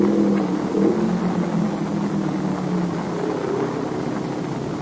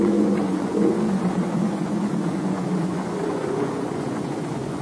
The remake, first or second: second